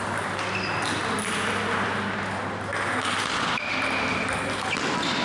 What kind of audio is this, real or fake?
real